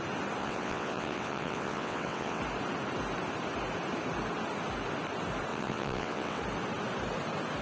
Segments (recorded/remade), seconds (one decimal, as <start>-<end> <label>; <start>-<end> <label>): 0.0-0.4 recorded; 0.4-2.4 remade; 2.4-5.5 recorded; 5.5-6.4 remade; 6.4-7.6 recorded